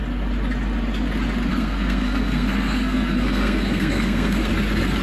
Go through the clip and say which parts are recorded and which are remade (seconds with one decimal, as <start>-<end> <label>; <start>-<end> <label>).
0.0-1.5 recorded; 1.5-4.5 remade; 4.5-5.0 recorded